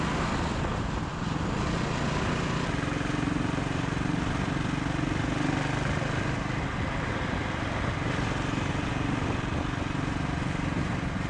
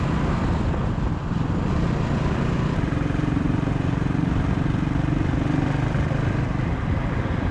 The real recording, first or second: first